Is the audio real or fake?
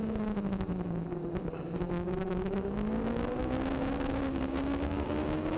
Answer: fake